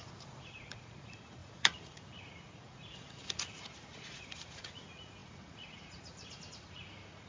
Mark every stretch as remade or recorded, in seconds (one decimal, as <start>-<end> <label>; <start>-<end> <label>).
0.0-7.3 remade